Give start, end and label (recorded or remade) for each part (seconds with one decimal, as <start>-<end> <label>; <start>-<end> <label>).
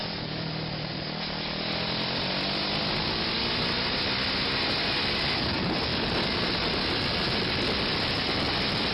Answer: 0.0-8.9 recorded